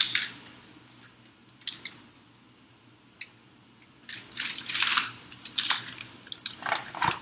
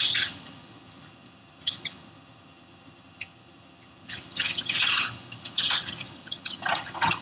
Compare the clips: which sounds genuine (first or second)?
first